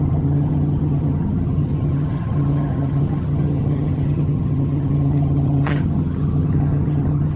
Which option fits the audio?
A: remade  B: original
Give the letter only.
A